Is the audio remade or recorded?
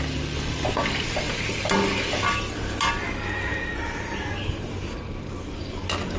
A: recorded